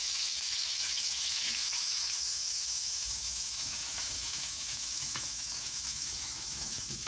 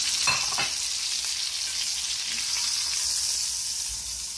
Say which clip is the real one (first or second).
second